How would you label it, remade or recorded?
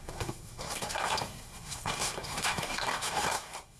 remade